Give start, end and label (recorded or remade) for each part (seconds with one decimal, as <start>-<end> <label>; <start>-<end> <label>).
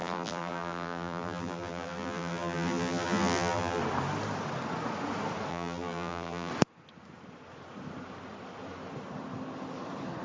0.0-3.8 remade; 3.8-5.5 recorded; 5.5-6.5 remade; 6.5-10.2 recorded